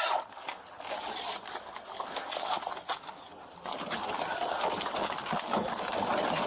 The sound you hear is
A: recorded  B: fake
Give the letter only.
A